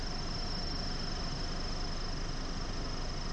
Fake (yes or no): no